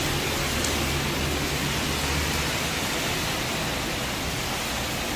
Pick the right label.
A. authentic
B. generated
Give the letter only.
A